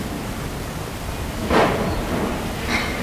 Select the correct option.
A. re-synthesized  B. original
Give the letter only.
B